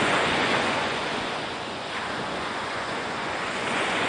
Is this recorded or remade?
remade